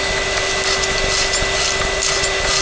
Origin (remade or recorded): recorded